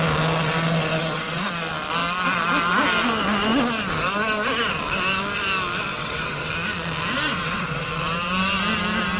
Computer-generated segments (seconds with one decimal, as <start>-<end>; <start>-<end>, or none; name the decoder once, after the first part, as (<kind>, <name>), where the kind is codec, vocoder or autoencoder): 1.0-1.5 (vocoder, WaveNeXt); 5.9-6.5; 7.3-7.9